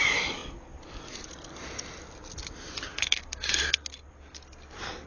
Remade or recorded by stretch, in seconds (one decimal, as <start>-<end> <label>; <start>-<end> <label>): 0.0-2.9 recorded; 2.9-3.6 remade; 3.6-5.1 recorded